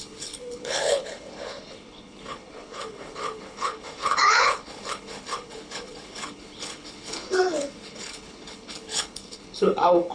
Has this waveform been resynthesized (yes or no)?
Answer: yes